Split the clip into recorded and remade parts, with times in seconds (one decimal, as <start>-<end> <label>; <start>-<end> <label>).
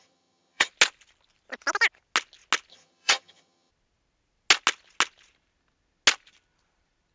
0.0-0.7 remade; 0.7-2.7 recorded; 2.7-3.7 remade; 3.7-7.1 recorded